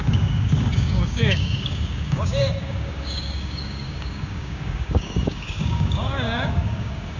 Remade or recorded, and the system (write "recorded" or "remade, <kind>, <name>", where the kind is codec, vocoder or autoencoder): remade, codec, DAC